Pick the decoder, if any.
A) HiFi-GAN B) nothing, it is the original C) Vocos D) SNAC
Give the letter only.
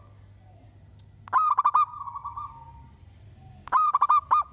B